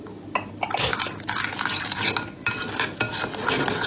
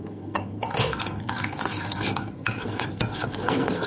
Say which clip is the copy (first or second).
second